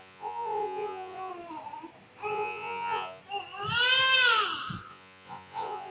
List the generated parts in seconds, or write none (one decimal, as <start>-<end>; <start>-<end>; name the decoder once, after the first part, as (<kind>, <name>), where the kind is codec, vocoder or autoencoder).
0.0-1.3 (vocoder, Vocos); 2.3-3.2; 4.9-5.9